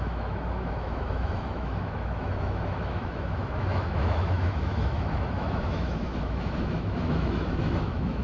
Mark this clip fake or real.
fake